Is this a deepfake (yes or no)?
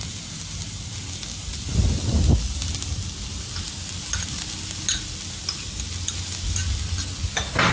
no